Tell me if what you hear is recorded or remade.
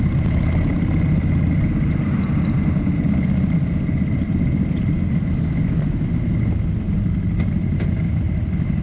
recorded